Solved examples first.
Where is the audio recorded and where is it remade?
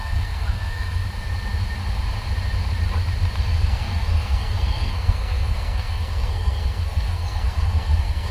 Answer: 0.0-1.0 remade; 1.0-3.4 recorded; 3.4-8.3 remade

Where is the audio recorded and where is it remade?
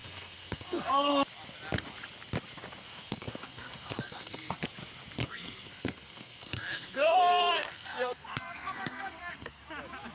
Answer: 0.0-1.1 remade; 1.1-2.8 recorded; 2.8-4.6 remade; 4.6-5.2 recorded; 5.2-9.6 remade; 9.6-10.1 recorded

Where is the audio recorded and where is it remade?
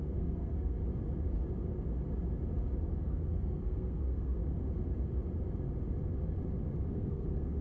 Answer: 0.0-0.8 remade; 0.8-3.1 recorded; 3.1-4.4 remade; 4.4-6.9 recorded; 6.9-7.6 remade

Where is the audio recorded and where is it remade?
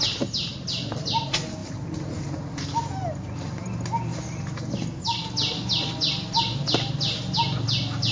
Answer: 0.0-8.1 recorded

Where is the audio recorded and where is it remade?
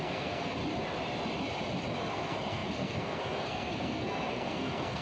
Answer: 0.0-0.6 remade; 0.6-2.1 recorded; 2.1-5.0 remade